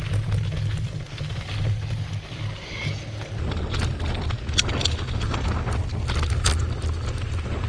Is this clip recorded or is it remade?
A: recorded